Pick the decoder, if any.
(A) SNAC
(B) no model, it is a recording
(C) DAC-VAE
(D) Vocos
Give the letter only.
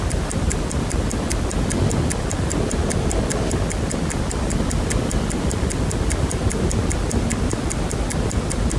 B